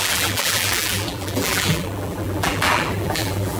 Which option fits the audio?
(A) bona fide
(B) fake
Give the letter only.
B